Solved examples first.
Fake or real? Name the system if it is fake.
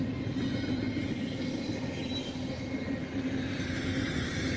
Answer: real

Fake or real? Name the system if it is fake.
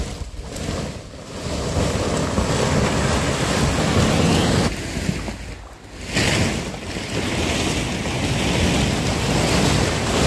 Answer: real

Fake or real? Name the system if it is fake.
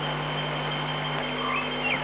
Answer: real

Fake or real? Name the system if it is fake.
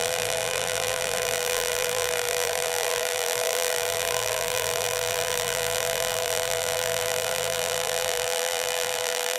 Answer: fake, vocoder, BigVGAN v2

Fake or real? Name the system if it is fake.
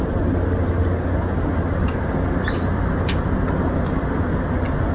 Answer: real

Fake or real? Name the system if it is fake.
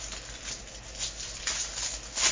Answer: real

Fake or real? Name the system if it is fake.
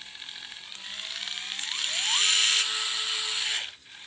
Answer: real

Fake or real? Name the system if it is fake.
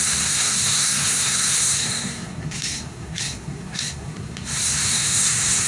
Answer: fake, codec, SNAC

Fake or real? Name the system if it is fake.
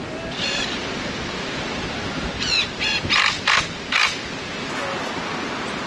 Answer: real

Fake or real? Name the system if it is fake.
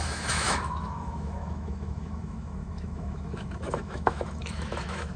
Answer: fake, autoencoder, DAC-VAE